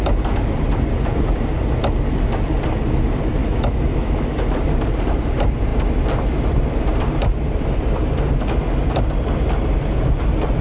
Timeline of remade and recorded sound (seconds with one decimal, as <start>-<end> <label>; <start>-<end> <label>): 0.0-3.4 recorded; 3.4-4.6 remade; 4.6-10.6 recorded